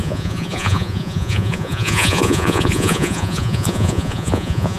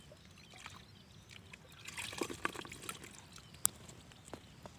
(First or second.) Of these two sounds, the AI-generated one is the first